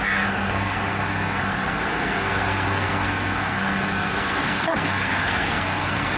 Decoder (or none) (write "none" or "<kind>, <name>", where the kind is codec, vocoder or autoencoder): codec, SNAC